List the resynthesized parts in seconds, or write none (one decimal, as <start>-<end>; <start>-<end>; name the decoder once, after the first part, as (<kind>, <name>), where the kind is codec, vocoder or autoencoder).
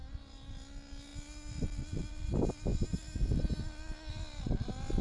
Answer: none